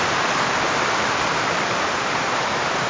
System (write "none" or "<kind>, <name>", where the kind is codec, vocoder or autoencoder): none